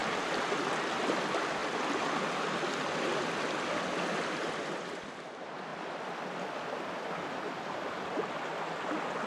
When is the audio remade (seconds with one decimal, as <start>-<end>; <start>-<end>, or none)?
none